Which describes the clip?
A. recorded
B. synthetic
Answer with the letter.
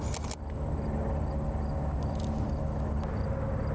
A